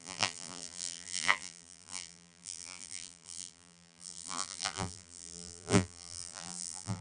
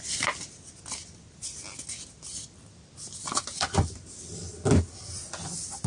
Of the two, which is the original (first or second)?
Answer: second